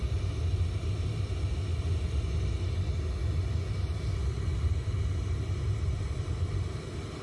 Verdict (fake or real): real